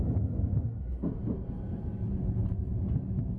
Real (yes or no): yes